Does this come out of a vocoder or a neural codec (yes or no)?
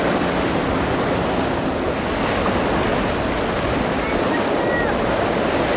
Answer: no